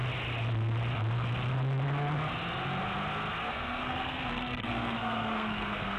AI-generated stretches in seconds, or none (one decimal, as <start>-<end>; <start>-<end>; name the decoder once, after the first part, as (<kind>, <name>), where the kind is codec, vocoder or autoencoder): 3.5-6.0 (codec, SNAC)